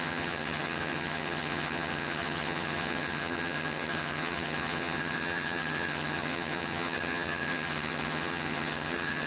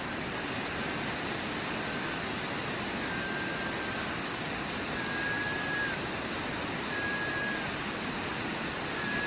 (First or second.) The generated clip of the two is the first